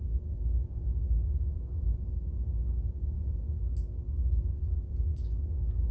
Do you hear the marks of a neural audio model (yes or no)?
no